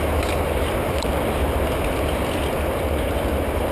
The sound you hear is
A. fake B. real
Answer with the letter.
B